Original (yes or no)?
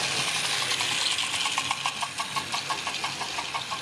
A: yes